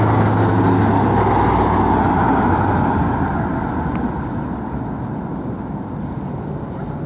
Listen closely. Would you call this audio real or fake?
real